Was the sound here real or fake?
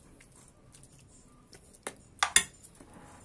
real